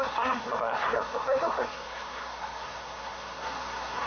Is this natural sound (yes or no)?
no